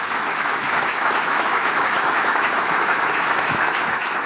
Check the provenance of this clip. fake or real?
fake